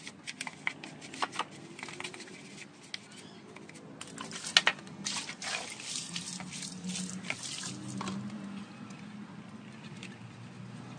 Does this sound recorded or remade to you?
recorded